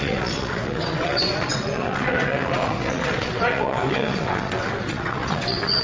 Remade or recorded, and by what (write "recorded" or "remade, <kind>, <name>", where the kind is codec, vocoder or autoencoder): remade, vocoder, WaveNeXt